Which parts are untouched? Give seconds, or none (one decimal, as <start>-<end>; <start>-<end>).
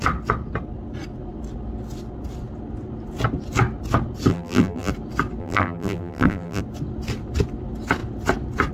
0.0-4.3; 4.9-5.4; 6.6-8.7